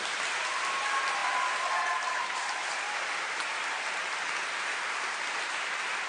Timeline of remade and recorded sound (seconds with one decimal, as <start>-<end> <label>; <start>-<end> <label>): 0.0-6.1 recorded